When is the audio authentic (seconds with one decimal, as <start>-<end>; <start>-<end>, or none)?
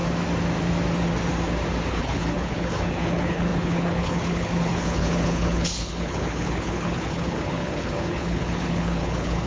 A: 0.0-1.9